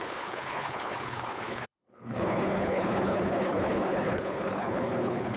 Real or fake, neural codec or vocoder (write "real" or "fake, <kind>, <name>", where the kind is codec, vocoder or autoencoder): fake, codec, HILCodec